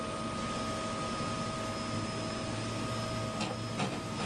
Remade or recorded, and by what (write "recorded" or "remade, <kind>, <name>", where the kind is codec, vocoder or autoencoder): recorded